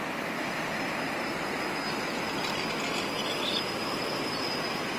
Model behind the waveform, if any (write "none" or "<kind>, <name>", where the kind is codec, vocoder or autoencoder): none